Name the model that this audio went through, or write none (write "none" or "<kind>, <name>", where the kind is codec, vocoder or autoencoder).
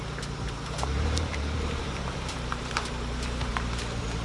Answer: vocoder, BigVGAN v2